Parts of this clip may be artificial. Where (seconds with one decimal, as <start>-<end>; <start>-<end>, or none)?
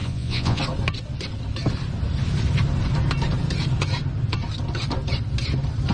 0.0-0.6